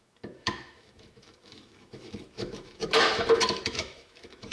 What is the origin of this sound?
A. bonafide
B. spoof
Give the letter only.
B